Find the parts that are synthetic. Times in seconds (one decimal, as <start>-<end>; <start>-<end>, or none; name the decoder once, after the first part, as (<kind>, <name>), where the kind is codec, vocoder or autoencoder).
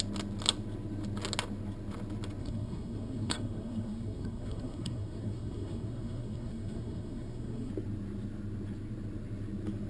2.4-7.7 (codec, SNAC)